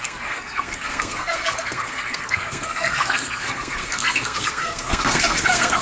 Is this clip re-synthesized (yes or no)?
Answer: yes